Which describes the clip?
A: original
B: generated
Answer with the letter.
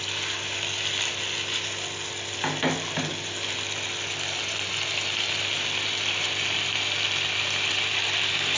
A